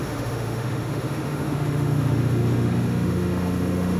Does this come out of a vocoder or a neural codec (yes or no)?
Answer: yes